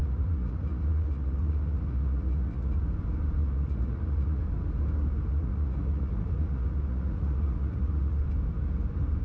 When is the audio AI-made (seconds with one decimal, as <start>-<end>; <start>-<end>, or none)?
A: 0.0-2.8; 3.4-4.4; 5.3-8.2